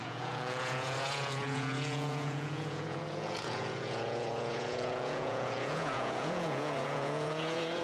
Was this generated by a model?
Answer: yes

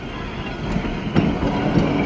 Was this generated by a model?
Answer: no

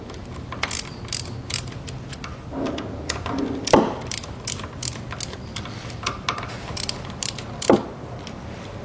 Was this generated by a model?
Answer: no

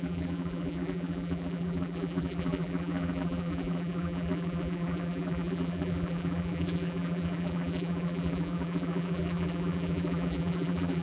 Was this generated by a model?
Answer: yes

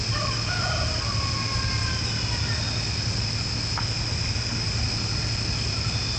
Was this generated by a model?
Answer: no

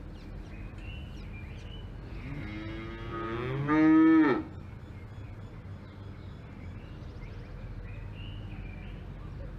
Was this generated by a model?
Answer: no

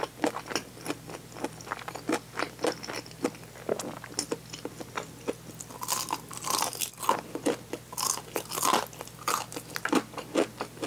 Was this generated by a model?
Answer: no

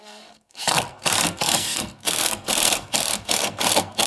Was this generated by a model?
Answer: yes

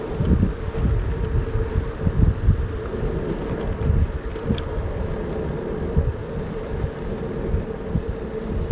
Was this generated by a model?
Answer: no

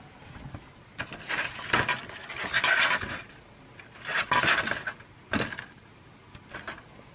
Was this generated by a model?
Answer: no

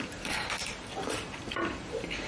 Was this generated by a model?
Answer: yes